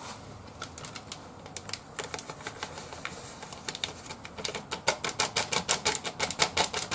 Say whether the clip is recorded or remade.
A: recorded